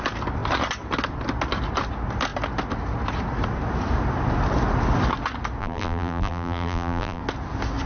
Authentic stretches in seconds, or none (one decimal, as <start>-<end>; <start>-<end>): 0.0-5.6; 7.2-7.9